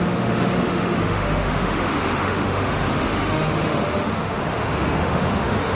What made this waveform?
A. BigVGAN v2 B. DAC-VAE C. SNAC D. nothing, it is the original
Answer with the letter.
B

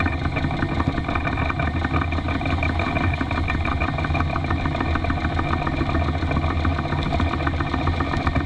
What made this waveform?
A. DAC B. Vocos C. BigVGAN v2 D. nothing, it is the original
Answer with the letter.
D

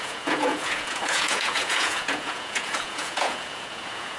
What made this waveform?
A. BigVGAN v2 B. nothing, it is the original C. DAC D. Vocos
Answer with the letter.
D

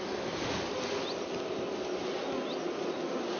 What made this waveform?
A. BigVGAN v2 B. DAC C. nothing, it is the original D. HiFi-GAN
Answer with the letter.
C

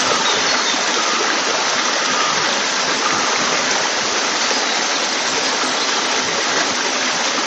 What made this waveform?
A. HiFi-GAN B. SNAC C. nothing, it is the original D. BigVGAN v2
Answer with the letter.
C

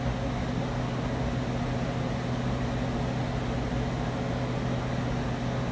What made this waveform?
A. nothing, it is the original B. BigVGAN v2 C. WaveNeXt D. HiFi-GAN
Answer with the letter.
A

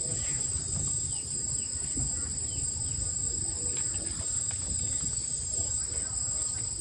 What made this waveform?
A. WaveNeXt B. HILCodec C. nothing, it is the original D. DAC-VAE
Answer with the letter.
C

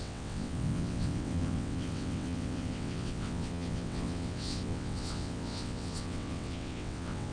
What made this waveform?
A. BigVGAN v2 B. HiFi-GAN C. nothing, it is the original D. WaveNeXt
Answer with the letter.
D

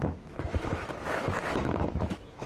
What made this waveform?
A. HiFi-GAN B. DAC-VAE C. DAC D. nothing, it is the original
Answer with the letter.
B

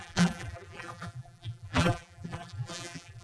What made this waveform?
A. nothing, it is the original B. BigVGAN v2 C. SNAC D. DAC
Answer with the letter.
B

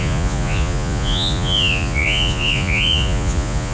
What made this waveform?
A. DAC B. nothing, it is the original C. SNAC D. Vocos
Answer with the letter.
D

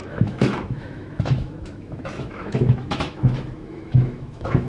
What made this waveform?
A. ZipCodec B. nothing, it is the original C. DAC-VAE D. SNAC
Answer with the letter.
C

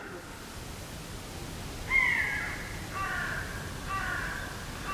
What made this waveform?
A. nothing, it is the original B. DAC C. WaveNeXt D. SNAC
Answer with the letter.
A